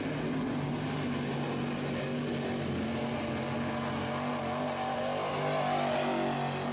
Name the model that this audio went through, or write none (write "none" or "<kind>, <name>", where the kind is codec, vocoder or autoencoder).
none